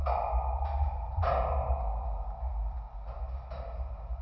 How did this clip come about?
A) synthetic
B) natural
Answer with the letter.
B